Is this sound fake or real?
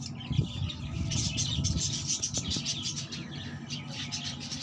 real